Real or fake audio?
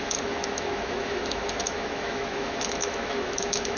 fake